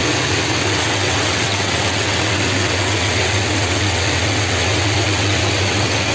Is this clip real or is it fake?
fake